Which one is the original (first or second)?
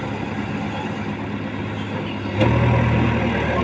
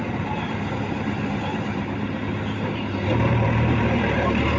first